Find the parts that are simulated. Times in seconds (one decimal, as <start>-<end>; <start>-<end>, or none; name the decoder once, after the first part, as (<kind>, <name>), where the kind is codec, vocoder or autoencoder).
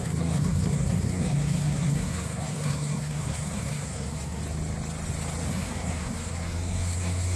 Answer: 0.0-4.4 (codec, SNAC); 5.5-7.4